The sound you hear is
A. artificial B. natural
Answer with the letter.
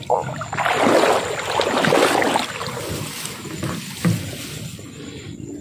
B